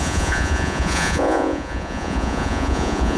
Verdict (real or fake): fake